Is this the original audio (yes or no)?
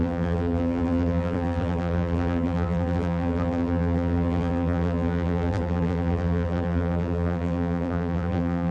no